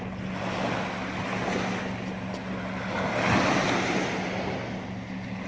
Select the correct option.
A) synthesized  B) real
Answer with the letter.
B